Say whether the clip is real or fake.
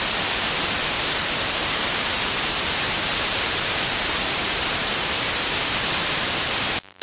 fake